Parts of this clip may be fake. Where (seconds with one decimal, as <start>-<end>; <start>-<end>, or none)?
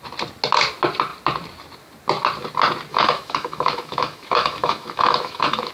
2.9-5.7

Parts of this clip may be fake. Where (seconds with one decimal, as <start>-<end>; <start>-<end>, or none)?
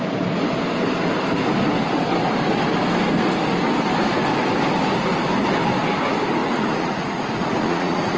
6.4-8.2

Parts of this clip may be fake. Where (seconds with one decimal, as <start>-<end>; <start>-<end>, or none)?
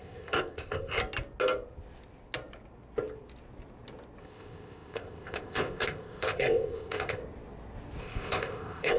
0.0-1.0; 4.2-7.2; 8.0-9.0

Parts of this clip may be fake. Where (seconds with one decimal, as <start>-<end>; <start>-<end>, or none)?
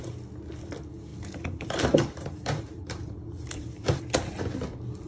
1.1-4.0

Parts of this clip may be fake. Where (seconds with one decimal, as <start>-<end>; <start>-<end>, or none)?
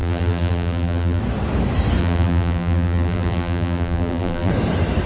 0.0-1.2; 2.0-4.5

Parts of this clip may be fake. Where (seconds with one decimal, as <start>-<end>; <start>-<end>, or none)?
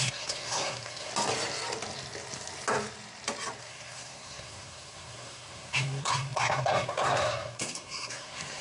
0.0-1.1; 3.6-8.6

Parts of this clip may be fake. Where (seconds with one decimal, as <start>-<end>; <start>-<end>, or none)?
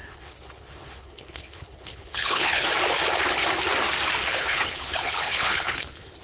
0.0-2.7; 4.3-6.2